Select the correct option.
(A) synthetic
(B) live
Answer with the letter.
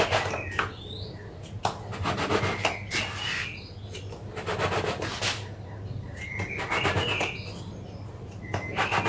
B